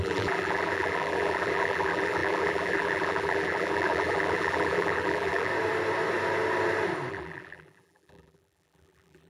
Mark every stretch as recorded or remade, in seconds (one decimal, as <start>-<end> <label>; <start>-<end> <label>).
0.0-5.5 remade; 5.5-7.1 recorded; 7.1-9.3 remade